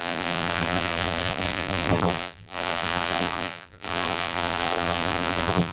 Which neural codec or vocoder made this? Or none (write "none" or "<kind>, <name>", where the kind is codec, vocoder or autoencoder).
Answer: vocoder, BigVGAN v2